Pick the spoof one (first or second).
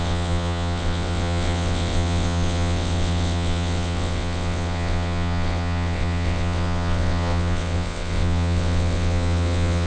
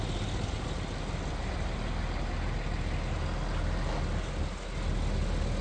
first